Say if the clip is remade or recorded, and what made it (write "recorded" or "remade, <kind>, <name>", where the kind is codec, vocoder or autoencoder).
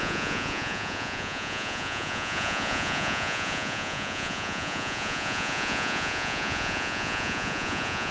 remade, vocoder, Vocos